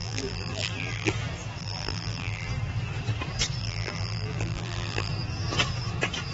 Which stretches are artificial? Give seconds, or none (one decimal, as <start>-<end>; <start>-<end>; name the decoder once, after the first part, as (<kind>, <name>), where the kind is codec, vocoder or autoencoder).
0.0-1.1 (vocoder, BigVGAN v2); 1.6-2.5; 3.6-5.1